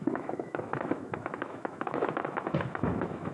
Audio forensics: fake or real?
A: fake